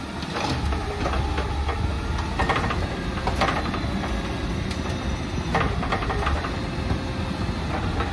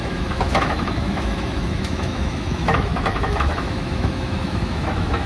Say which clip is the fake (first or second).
second